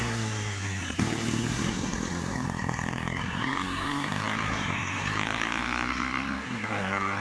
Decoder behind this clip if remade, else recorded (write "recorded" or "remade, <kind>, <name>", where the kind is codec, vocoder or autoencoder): remade, codec, SNAC